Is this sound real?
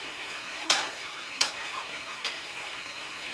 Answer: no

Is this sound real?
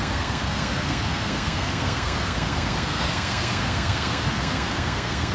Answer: no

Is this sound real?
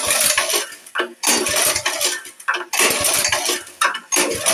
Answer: yes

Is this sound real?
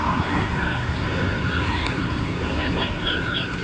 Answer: no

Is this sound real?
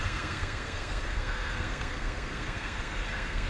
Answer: no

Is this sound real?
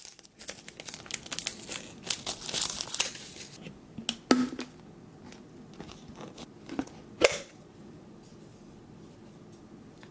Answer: yes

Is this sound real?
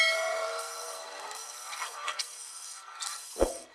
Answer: no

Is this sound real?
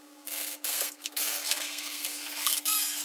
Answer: no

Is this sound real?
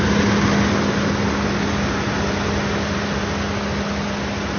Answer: yes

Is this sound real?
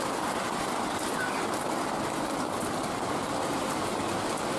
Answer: yes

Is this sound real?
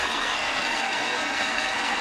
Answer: no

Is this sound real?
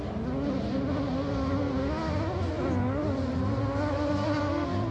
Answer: yes